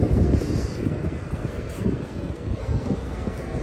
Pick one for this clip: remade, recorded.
remade